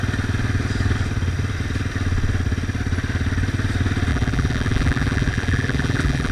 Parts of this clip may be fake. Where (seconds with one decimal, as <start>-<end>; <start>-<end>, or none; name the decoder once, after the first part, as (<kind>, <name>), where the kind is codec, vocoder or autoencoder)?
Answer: 4.1-6.3 (vocoder, BigVGAN v2)